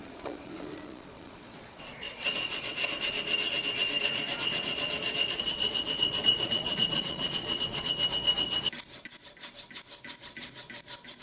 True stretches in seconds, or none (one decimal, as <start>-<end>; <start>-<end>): 2.9-4.1; 7.9-11.2